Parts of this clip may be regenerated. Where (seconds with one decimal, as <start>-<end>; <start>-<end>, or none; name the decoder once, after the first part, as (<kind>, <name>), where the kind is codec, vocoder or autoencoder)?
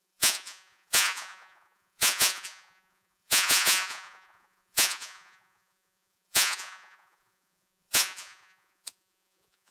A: 0.0-9.7 (vocoder, Vocos)